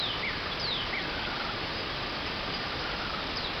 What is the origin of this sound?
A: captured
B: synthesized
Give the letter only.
A